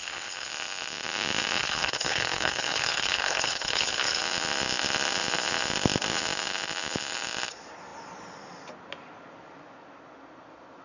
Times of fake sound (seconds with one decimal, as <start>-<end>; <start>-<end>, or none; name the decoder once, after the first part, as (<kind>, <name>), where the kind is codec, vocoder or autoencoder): 0.0-0.5 (codec, HILCodec); 1.6-4.2